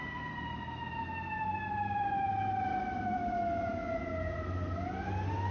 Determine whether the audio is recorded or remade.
recorded